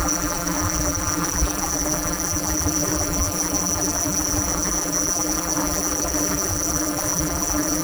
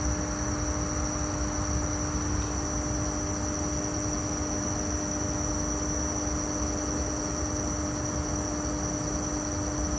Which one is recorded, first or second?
second